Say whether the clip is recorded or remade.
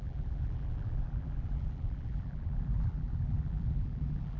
remade